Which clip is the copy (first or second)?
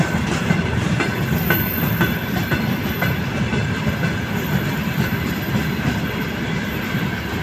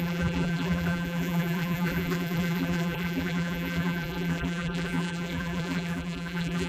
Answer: second